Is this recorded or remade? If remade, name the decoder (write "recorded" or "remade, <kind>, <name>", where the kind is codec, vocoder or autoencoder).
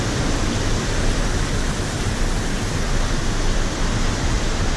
recorded